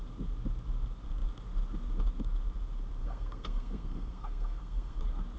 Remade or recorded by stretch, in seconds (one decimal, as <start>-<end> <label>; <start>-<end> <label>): 0.0-3.0 recorded; 3.0-5.0 remade; 5.0-5.4 recorded